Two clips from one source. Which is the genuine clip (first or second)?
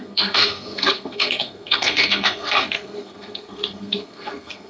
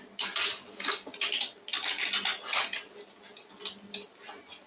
second